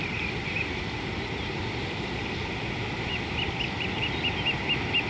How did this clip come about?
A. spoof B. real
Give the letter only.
B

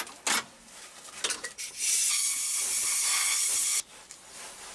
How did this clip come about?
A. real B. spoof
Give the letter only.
A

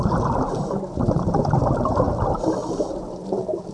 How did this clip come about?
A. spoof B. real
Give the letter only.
A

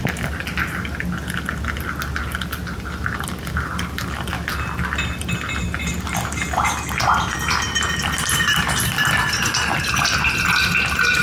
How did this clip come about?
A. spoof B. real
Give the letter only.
B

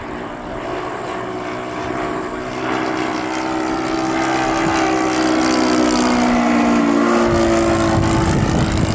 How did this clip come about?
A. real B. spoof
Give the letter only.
A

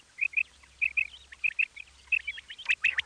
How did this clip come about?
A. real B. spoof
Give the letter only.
A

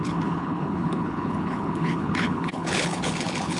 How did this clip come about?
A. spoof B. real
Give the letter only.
A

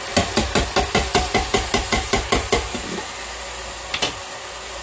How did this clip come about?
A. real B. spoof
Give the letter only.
A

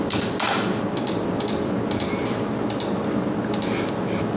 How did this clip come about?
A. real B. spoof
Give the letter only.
A